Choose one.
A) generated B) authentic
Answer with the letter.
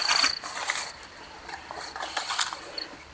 B